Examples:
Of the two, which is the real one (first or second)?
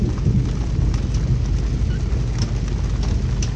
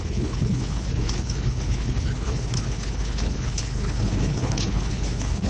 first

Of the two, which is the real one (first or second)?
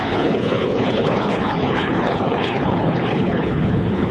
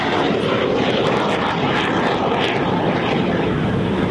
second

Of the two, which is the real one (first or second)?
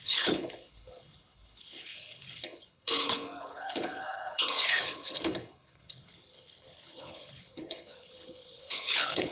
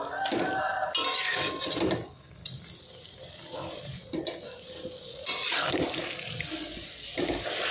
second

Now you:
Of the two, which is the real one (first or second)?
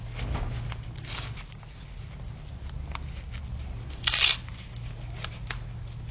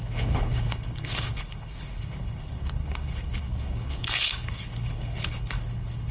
first